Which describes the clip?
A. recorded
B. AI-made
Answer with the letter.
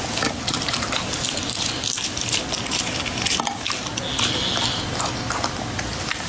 A